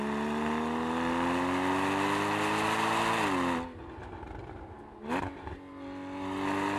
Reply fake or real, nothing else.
real